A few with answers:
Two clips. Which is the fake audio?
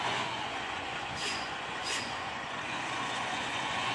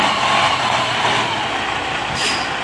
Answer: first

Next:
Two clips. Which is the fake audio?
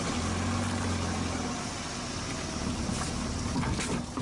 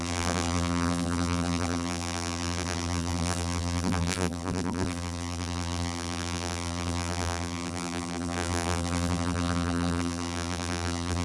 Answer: second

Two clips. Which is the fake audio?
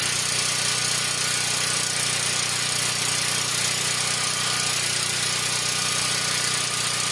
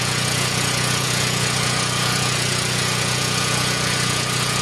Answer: second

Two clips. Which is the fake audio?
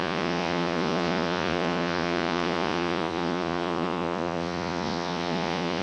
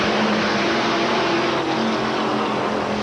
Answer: first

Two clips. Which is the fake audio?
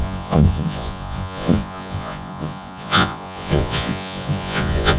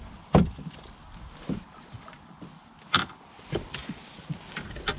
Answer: first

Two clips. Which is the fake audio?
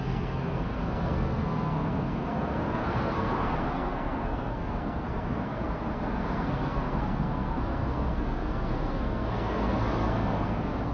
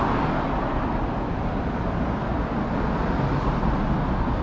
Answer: first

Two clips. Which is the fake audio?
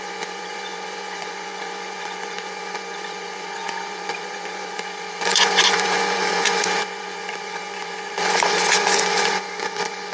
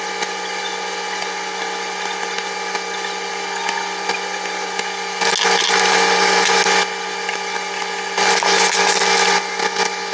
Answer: first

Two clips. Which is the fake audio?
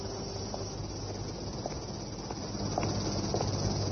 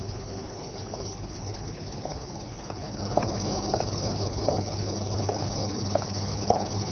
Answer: second